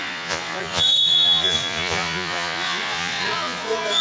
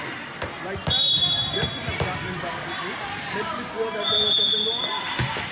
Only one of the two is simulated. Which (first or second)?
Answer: first